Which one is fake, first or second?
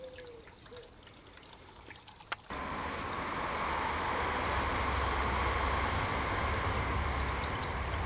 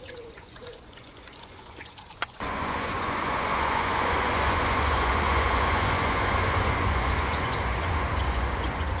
second